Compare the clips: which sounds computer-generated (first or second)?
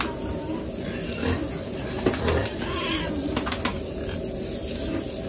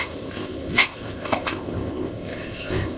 second